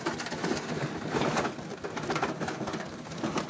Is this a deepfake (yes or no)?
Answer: no